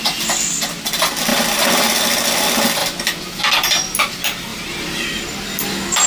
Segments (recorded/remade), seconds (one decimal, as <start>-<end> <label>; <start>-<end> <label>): 0.0-6.1 recorded